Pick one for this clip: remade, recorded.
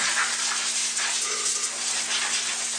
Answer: recorded